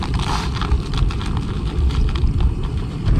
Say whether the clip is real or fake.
fake